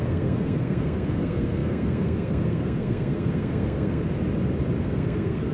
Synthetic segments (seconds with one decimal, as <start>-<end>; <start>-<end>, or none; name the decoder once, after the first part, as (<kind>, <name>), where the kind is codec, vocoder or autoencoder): 0.0-4.0 (codec, SNAC); 4.8-5.5